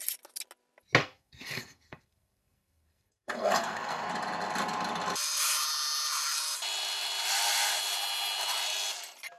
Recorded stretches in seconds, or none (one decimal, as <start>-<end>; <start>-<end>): 0.0-1.0; 4.1-9.4